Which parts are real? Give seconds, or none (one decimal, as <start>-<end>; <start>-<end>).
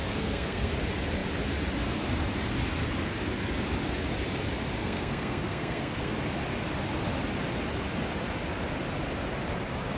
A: 0.7-4.8; 6.1-10.0